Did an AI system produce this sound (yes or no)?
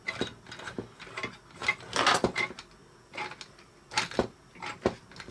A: no